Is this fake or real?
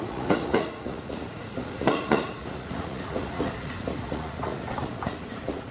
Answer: fake